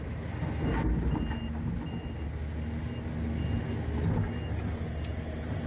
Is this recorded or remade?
recorded